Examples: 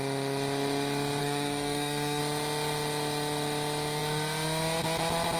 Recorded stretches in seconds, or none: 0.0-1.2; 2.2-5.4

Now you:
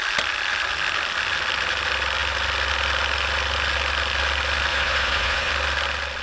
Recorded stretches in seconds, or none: 0.0-4.7; 5.5-6.2

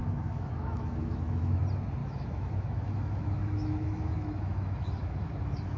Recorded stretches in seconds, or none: 1.6-2.0

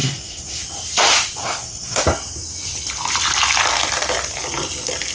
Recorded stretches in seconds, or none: 0.6-1.4; 2.0-5.1

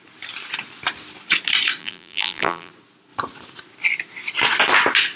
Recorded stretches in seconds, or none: 0.0-1.8; 2.7-5.2

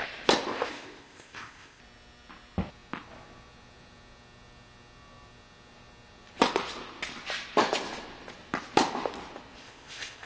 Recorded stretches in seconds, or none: 0.0-0.5; 1.8-9.6

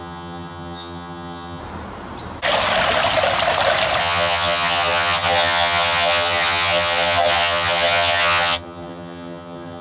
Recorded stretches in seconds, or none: 1.6-4.0